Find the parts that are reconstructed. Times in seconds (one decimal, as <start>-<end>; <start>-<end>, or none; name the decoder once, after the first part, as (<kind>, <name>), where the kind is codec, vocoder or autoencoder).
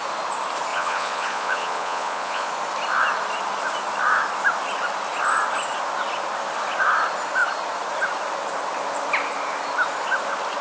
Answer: 0.7-2.5 (vocoder, Vocos)